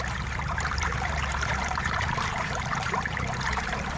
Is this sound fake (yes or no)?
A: yes